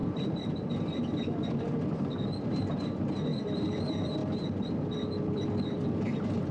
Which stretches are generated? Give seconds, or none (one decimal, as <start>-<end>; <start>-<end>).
0.0-4.2; 4.9-6.5